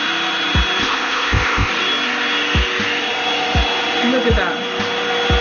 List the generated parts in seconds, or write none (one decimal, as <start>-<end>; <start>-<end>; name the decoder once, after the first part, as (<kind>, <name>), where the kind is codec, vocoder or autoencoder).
0.8-1.7 (codec, ZipCodec)